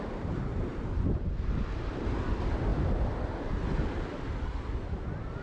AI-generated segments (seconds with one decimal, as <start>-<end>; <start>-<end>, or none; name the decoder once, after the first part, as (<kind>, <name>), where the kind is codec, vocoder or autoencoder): none

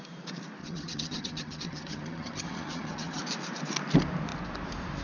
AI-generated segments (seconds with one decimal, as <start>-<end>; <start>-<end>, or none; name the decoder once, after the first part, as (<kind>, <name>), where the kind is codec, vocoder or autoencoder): 0.6-3.2 (vocoder, HiFi-GAN)

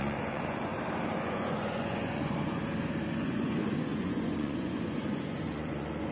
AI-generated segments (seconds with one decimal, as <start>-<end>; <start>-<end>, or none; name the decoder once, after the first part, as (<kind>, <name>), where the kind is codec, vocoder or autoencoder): 0.0-0.7 (vocoder, Vocos); 1.2-2.6; 3.1-6.1

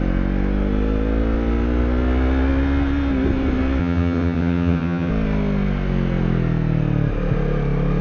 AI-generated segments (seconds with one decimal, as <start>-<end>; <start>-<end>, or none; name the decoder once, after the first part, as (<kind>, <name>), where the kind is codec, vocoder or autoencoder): 3.8-5.1 (vocoder, HiFi-GAN)

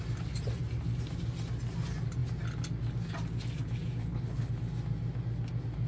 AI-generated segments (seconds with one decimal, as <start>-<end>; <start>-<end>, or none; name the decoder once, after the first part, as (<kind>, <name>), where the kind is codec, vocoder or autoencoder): 4.0-4.5 (codec, HILCodec)

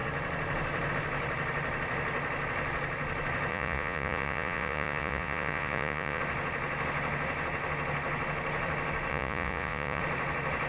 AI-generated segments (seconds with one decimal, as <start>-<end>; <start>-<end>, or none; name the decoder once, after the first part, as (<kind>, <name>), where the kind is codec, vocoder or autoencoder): 3.5-6.2 (vocoder, Vocos); 9.1-10.0

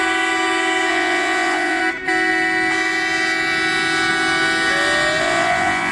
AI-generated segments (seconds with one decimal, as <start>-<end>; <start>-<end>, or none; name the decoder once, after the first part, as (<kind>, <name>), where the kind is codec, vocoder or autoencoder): 0.9-1.8 (vocoder, Vocos); 5.2-5.9